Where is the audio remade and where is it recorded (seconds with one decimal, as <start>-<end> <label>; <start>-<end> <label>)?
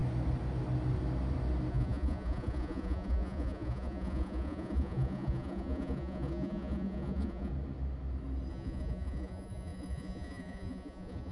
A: 0.0-1.7 recorded; 1.7-7.5 remade; 7.5-8.5 recorded; 8.5-11.3 remade